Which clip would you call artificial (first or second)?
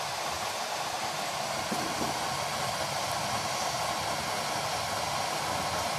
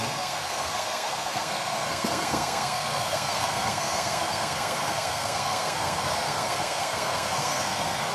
second